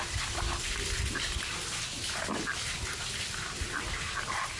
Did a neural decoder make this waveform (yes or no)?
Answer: no